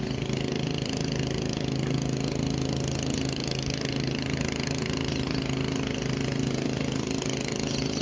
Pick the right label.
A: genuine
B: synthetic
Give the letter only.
A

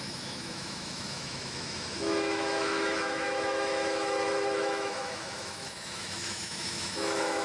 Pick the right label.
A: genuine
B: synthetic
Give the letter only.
B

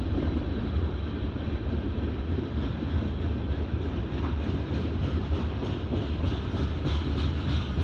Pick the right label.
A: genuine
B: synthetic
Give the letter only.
A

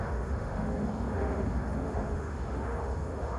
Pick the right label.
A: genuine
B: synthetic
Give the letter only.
B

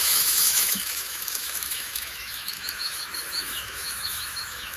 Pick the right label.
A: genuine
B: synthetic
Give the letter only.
B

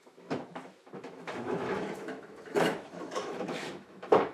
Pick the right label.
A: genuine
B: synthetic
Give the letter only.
B